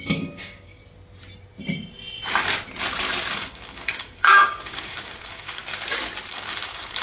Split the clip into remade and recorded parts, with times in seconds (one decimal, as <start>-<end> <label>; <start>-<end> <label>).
0.0-0.8 remade; 0.8-3.3 recorded; 3.3-5.6 remade; 5.6-6.3 recorded; 6.3-7.0 remade